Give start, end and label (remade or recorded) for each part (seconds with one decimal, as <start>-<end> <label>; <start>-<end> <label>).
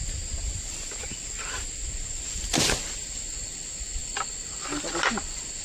0.0-5.6 recorded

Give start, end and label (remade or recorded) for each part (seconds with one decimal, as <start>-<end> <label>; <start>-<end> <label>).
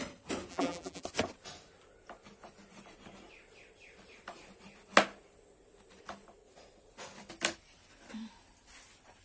0.0-0.5 recorded; 0.5-1.0 remade; 1.0-9.2 recorded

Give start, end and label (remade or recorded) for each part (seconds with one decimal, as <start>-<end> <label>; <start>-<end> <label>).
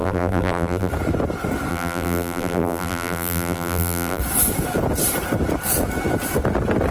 0.0-0.9 remade; 0.9-1.7 recorded; 1.7-4.2 remade; 4.2-6.9 recorded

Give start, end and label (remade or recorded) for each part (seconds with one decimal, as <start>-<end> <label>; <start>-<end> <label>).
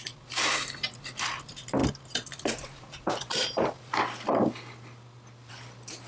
0.0-6.1 recorded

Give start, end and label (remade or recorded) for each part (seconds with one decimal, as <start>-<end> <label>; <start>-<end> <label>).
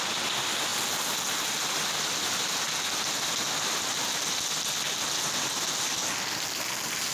0.0-7.1 recorded